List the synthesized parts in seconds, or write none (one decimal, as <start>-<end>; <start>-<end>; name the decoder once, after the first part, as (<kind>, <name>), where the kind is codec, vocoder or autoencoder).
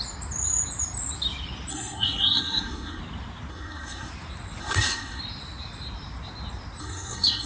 1.7-3.0 (codec, SNAC); 3.5-4.1; 4.6-5.2; 6.8-7.5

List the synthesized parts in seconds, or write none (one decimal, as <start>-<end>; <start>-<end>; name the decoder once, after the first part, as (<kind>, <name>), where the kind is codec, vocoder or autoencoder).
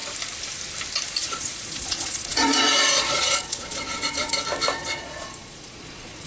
1.2-4.3 (vocoder, Vocos); 4.8-6.3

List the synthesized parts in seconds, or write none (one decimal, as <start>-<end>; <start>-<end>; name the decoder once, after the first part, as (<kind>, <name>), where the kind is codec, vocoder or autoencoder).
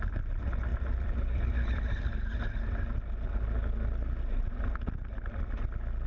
0.7-2.1 (vocoder, BigVGAN v2)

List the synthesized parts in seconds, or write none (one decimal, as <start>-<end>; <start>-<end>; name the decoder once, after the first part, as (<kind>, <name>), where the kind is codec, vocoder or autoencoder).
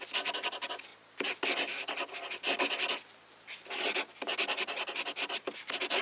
none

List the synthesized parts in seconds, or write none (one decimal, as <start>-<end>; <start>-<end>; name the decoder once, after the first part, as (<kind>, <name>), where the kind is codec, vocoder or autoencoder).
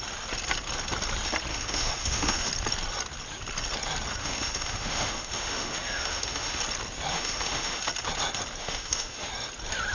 1.5-2.5 (autoencoder, DAC-VAE); 4.2-6.6; 7.1-7.8; 8.6-9.3